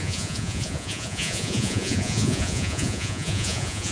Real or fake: fake